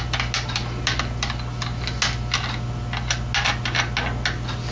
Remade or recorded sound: recorded